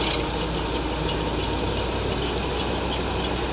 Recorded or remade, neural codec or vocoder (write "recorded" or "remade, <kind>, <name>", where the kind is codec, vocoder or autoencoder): recorded